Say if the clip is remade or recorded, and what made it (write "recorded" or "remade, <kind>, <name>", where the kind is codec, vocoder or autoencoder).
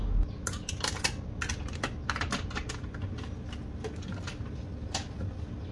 recorded